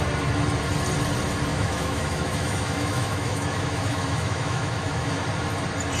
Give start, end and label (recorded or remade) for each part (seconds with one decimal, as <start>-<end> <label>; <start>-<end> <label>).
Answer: 0.0-1.5 recorded; 1.5-5.1 remade; 5.1-6.0 recorded